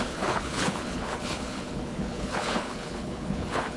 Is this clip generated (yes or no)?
yes